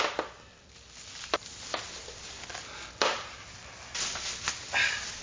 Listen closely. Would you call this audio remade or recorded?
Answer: recorded